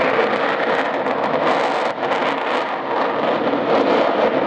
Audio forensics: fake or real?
real